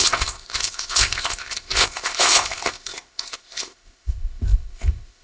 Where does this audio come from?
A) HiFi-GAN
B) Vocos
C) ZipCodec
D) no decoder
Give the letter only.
C